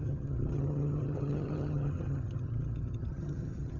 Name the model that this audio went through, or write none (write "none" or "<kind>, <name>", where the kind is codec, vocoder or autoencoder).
vocoder, HiFi-GAN